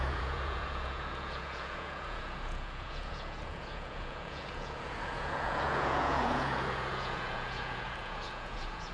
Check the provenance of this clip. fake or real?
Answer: fake